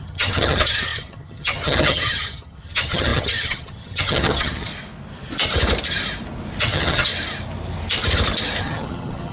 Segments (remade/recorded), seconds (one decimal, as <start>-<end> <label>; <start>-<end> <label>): 0.0-4.7 remade; 4.7-6.6 recorded; 6.6-7.1 remade; 7.1-8.6 recorded; 8.6-9.3 remade